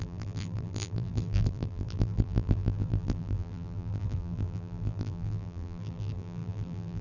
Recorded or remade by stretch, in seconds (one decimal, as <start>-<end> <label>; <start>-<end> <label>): 0.0-7.0 remade